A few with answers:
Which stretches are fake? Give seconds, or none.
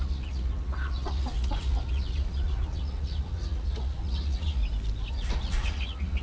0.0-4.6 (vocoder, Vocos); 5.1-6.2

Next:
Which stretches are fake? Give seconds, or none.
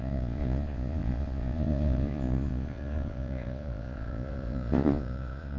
0.0-5.6 (vocoder, Vocos)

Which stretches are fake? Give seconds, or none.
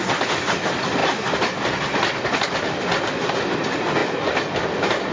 none